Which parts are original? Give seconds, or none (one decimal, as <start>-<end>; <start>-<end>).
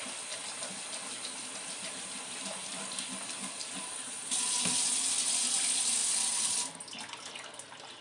0.0-6.0; 6.5-8.0